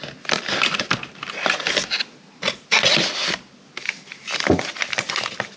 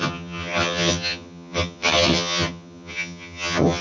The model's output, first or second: second